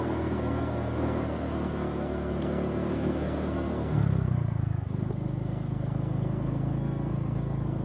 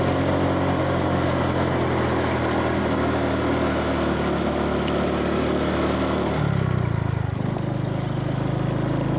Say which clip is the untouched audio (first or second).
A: second